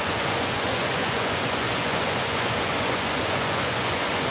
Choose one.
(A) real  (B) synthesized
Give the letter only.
B